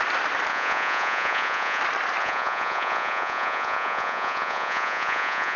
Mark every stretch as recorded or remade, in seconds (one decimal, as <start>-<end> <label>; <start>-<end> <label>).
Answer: 0.0-0.5 recorded; 0.5-1.8 remade; 1.8-2.2 recorded; 2.2-5.6 remade